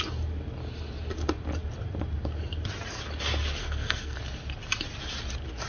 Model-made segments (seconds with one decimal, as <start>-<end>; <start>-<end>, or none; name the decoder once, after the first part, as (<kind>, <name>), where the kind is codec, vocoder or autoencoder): 3.6-4.2 (codec, SNAC)